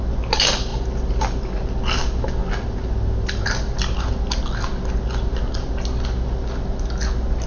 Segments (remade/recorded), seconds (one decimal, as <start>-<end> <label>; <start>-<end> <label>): 0.0-7.5 recorded